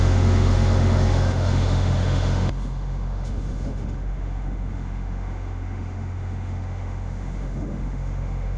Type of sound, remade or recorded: remade